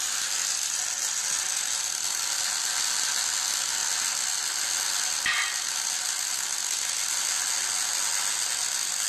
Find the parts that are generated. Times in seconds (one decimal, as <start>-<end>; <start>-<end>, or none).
none